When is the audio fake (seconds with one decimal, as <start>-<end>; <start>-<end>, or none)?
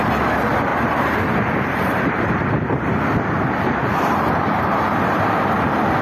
0.7-2.9; 3.9-5.2